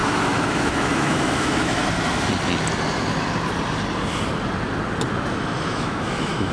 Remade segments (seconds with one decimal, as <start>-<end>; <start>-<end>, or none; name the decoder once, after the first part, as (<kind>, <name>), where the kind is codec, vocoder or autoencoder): 0.0-1.8 (autoencoder, DAC-VAE); 5.7-6.5